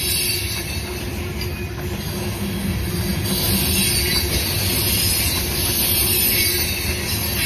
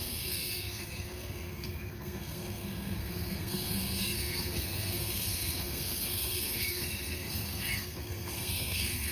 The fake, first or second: second